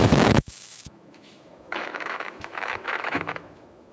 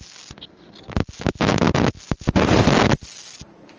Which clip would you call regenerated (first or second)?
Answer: first